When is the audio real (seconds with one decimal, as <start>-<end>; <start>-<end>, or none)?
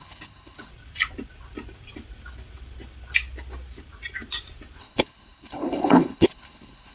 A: 0.7-4.8